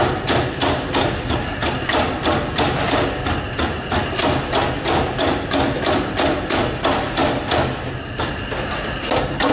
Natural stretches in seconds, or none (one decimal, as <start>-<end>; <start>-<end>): 0.0-9.5